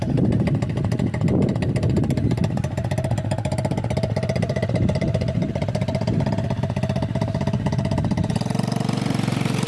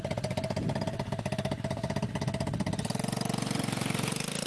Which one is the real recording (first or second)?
second